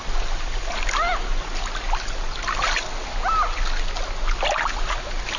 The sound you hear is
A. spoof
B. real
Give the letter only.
B